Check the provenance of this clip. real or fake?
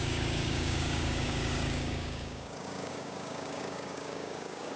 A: fake